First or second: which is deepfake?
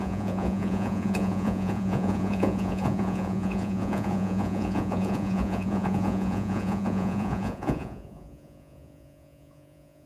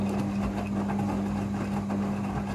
first